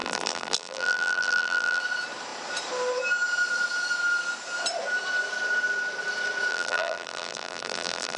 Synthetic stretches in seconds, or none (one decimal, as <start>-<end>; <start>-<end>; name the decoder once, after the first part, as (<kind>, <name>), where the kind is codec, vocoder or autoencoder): 0.0-1.8 (vocoder, BigVGAN v2); 6.5-8.2